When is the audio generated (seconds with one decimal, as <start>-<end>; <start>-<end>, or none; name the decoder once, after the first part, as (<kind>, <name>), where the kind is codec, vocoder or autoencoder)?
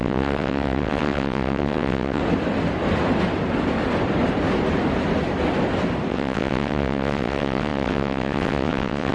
0.0-2.2 (vocoder, WaveNeXt); 6.1-9.1